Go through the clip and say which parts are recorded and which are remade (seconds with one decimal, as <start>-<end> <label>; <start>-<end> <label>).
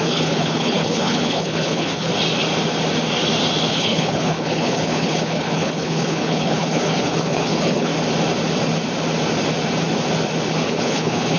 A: 0.0-2.1 remade; 2.1-3.7 recorded; 3.7-7.9 remade; 7.9-10.5 recorded; 10.5-11.4 remade